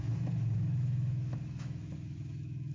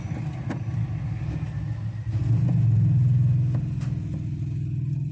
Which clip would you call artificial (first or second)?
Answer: first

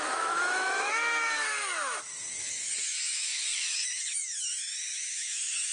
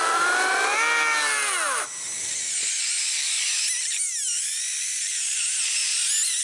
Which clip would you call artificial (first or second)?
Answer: first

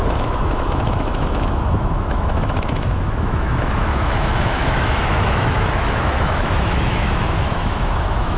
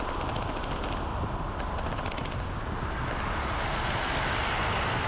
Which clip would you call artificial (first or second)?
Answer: first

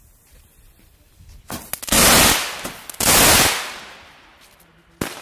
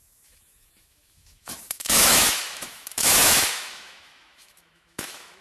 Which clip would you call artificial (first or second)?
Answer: second